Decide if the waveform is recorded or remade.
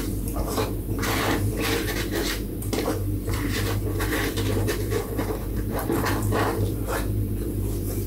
remade